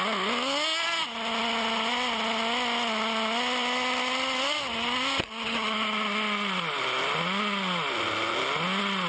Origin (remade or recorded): recorded